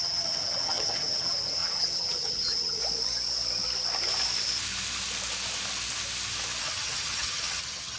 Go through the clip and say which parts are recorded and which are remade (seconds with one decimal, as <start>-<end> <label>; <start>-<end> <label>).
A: 0.0-2.8 remade; 2.8-6.6 recorded; 6.6-8.0 remade